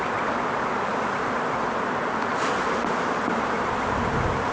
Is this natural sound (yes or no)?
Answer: yes